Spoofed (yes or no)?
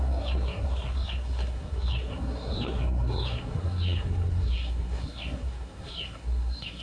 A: yes